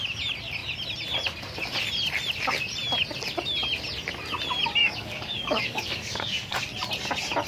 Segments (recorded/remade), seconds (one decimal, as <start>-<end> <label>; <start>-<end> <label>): 0.0-4.8 recorded; 4.8-6.6 remade; 6.6-7.5 recorded